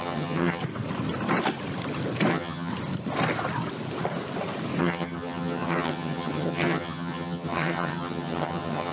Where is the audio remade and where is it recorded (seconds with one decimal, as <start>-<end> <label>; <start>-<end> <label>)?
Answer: 0.0-0.6 remade; 0.6-2.3 recorded; 2.3-2.7 remade; 2.7-4.8 recorded; 4.8-8.9 remade